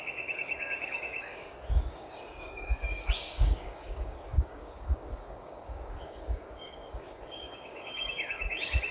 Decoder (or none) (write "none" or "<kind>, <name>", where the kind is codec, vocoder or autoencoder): codec, DAC